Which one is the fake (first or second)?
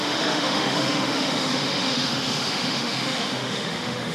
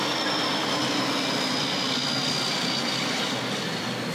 first